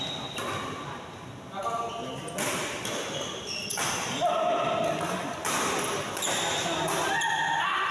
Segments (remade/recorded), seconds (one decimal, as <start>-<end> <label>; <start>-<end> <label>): 0.0-7.9 recorded

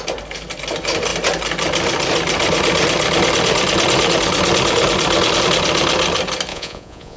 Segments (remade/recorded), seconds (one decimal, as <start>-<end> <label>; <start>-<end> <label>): 0.0-6.5 recorded; 6.5-7.2 remade

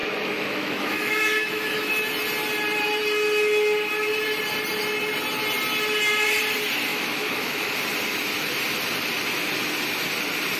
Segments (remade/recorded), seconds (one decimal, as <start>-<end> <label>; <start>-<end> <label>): 0.0-1.9 remade; 1.9-6.9 recorded; 6.9-7.7 remade; 7.7-10.6 recorded

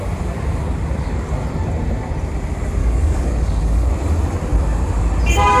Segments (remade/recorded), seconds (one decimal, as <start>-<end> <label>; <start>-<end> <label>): 0.0-2.8 recorded; 2.8-3.9 remade; 3.9-5.6 recorded

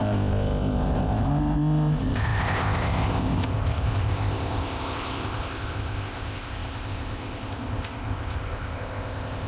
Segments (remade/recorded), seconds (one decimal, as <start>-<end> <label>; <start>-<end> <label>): 0.0-9.5 remade

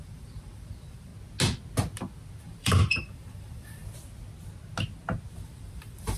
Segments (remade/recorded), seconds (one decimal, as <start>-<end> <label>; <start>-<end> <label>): 0.0-1.1 remade; 1.1-2.4 recorded; 2.4-3.8 remade; 3.8-5.3 recorded; 5.3-6.2 remade

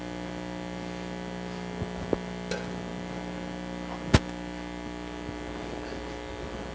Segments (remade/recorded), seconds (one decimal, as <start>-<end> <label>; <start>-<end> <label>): 0.0-6.7 recorded